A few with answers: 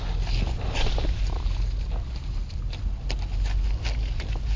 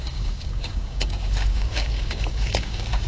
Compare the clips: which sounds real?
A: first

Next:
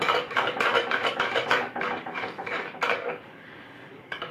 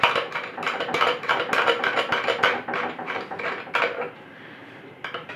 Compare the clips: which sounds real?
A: second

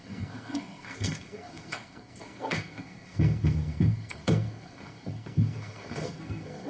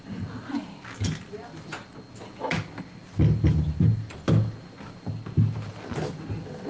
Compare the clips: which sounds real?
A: second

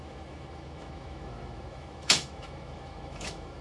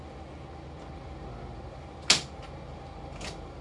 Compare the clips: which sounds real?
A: second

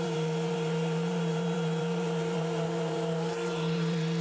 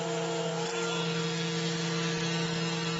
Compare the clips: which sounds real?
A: second